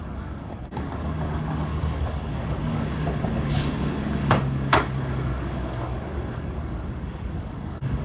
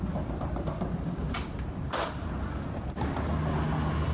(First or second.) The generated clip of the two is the first